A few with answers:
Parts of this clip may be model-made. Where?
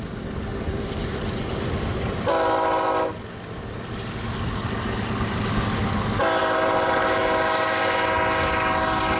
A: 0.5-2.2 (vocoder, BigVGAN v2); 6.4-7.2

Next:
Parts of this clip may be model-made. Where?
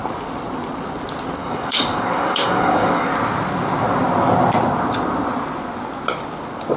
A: 1.4-3.1 (codec, DAC)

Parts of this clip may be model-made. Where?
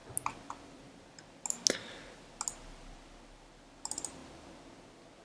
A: none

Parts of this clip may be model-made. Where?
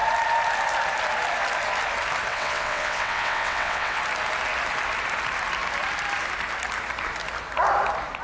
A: 2.3-4.0 (vocoder, WaveNeXt)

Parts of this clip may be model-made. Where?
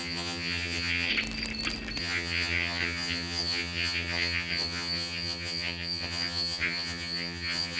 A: 0.0-1.1 (vocoder, HiFi-GAN); 2.0-7.8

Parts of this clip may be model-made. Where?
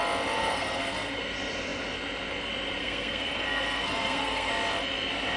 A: 0.4-1.2 (codec, SNAC); 2.8-4.5